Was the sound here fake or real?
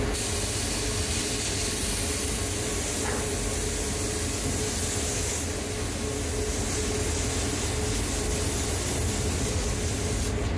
real